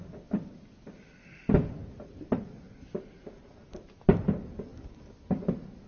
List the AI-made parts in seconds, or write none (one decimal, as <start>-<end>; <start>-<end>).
none